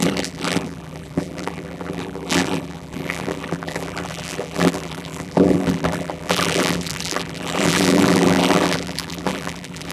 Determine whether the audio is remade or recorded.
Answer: remade